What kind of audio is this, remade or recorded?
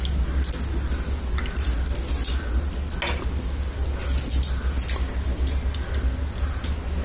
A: recorded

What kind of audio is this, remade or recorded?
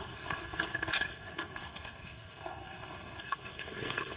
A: remade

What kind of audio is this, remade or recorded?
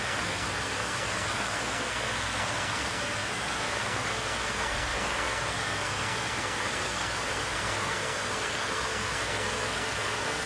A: remade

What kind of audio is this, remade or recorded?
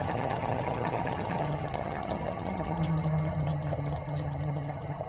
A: remade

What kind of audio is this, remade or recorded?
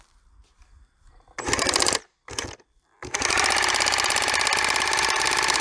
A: recorded